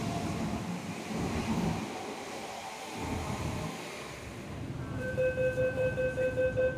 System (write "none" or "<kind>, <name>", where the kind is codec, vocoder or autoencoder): none